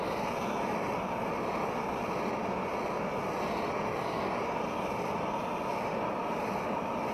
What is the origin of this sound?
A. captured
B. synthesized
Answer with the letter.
A